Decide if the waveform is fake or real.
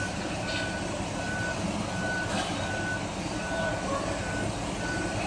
real